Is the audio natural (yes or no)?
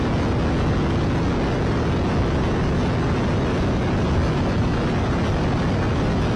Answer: yes